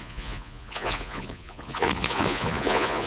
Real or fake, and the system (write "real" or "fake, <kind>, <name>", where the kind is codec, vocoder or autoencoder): fake, vocoder, Vocos